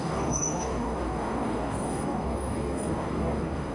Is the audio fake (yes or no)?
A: yes